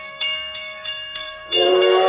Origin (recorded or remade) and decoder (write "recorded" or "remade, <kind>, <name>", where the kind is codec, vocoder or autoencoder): remade, codec, SNAC